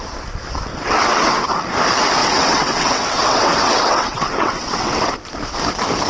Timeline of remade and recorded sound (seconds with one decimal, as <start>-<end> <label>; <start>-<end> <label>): 0.0-0.7 recorded; 0.7-1.5 remade; 1.5-2.2 recorded; 2.2-5.1 remade; 5.1-6.1 recorded